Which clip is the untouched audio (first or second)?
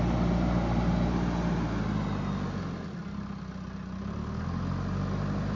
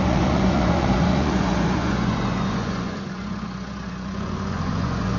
first